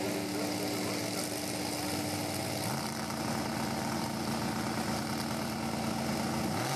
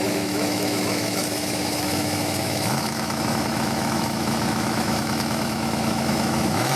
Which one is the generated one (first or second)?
second